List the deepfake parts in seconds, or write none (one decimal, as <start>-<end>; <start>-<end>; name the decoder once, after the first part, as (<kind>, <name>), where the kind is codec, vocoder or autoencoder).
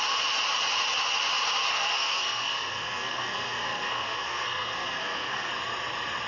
1.7-5.5 (codec, SNAC)